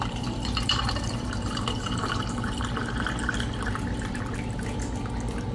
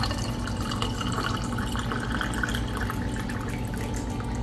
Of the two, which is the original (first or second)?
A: second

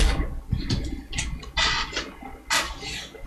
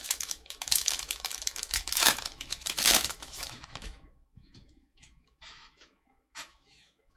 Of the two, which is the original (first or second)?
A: first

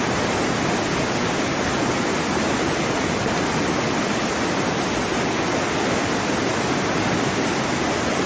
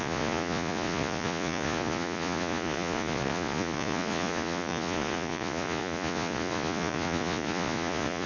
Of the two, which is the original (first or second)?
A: first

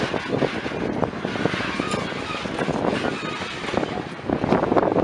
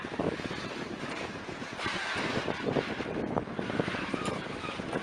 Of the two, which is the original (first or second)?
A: first